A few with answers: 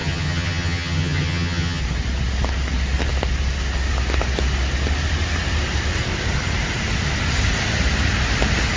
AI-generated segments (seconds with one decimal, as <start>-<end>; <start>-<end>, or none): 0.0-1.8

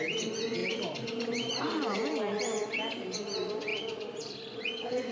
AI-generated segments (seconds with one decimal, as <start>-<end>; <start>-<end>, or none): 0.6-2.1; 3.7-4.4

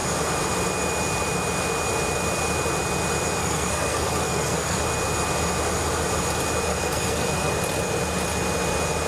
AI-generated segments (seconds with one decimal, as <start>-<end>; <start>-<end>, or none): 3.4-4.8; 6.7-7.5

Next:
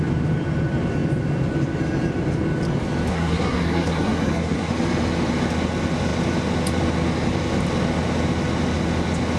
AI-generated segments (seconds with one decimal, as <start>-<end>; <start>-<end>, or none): 3.1-4.7

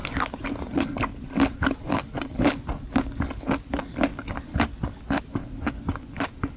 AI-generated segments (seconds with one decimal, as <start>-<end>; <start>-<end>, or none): none

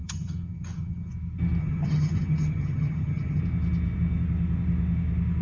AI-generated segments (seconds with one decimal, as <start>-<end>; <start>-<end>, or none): 0.0-1.1; 1.6-3.4

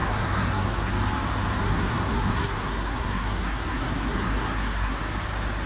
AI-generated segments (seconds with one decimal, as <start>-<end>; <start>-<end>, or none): 0.0-0.9; 1.6-5.0

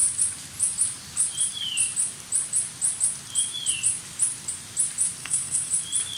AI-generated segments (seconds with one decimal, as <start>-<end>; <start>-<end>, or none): 5.2-5.7